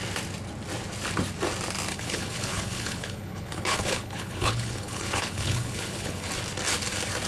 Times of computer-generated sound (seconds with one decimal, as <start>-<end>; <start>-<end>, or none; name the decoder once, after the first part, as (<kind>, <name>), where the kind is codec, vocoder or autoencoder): 1.9-6.3 (codec, HILCodec)